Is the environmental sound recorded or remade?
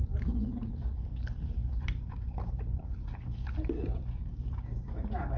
remade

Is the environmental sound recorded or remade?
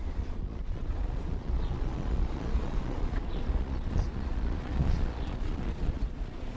remade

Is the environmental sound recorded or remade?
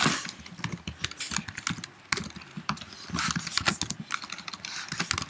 recorded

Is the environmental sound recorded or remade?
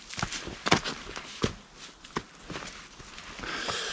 recorded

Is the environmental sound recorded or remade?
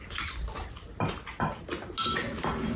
recorded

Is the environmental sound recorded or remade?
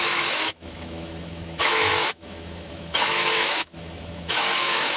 remade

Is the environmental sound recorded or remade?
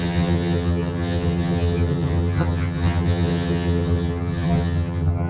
remade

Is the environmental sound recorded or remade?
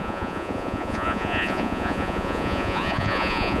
remade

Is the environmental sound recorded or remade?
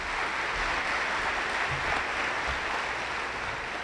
recorded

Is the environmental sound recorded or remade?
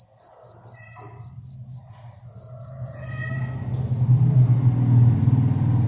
recorded